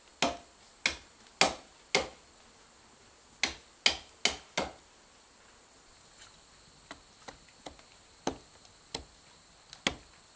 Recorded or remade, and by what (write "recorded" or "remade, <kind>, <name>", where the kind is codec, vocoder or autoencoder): recorded